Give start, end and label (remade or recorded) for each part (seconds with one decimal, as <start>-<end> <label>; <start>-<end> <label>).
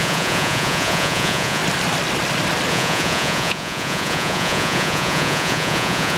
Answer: 0.0-1.6 remade; 1.6-2.7 recorded; 2.7-6.2 remade